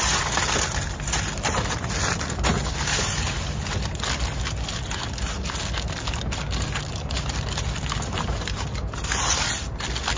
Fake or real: real